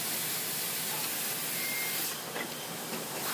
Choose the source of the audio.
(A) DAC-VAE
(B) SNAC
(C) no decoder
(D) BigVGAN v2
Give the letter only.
C